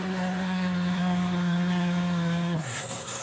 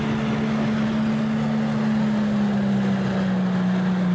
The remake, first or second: first